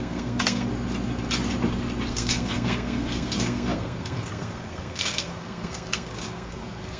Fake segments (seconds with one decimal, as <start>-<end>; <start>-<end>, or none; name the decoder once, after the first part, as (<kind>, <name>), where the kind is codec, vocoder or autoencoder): 0.0-0.7 (codec, SNAC); 2.1-7.0